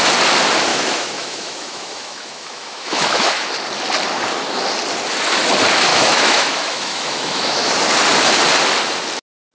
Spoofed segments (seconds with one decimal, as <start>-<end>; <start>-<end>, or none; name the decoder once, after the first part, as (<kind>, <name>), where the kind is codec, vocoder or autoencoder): 0.7-3.5 (autoencoder, DAC-VAE); 5.9-7.7